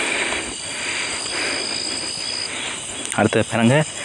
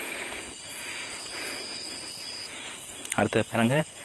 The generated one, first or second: second